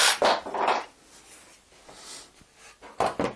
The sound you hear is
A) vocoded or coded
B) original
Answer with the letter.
B